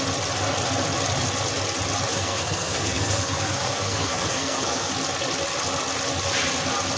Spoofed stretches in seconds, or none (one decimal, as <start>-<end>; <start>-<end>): 2.1-4.9